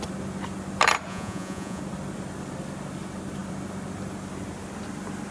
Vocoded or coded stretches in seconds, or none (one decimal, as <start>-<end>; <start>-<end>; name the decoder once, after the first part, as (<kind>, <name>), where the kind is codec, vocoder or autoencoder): 1.1-1.8 (vocoder, Vocos)